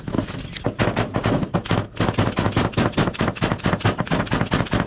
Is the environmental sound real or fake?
real